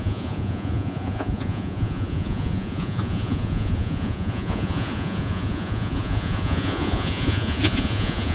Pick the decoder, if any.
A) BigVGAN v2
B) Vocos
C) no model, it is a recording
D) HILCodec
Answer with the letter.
B